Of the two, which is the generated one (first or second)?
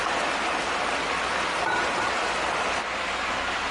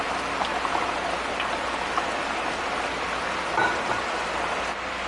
first